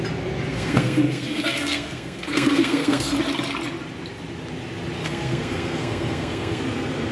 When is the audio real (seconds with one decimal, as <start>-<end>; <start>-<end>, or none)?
0.0-0.5; 3.1-5.0; 6.6-7.1